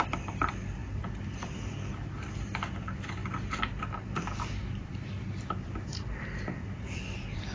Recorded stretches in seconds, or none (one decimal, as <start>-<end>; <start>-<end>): 3.2-3.8